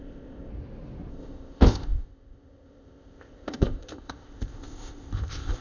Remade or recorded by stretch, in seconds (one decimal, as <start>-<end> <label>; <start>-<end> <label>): 0.0-0.5 remade; 0.5-1.1 recorded; 1.1-5.6 remade